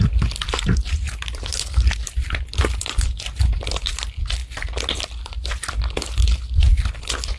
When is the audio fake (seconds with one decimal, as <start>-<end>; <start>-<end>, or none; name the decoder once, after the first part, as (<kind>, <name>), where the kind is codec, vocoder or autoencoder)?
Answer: 1.5-3.4 (vocoder, BigVGAN v2)